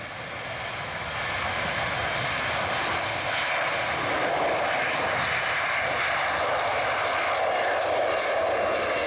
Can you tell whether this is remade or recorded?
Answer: recorded